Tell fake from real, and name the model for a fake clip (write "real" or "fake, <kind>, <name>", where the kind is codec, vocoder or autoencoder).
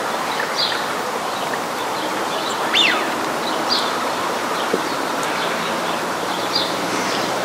fake, vocoder, BigVGAN v2